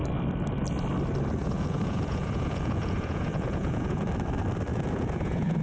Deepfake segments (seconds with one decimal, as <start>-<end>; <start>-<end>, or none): 1.4-4.1; 4.7-5.6